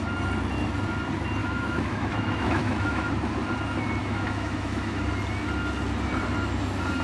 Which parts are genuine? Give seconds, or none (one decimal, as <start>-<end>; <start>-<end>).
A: 0.0-1.4; 3.1-4.0; 5.0-7.0